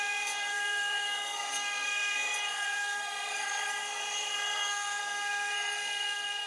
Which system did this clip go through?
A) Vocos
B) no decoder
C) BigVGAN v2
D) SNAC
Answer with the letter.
D